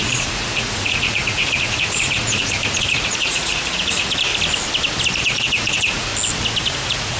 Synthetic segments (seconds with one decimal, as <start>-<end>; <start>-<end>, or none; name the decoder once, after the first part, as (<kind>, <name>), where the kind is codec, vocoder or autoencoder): 0.0-4.3 (vocoder, Vocos); 5.2-6.1; 6.6-7.2